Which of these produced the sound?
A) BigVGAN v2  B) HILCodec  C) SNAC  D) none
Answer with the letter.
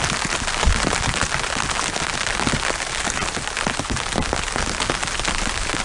D